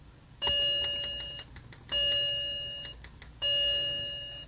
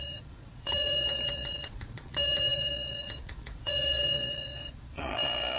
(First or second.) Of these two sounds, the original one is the first